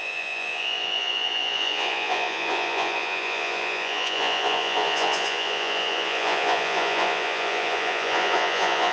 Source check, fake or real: fake